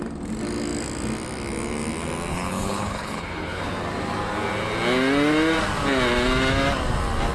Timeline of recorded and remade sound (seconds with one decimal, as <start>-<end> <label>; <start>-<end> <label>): 0.0-2.3 recorded; 2.3-3.7 remade; 3.7-7.3 recorded